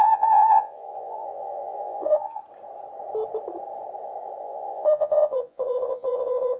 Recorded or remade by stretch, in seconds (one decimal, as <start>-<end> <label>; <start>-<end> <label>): 0.0-2.4 remade; 2.4-4.4 recorded; 4.4-6.6 remade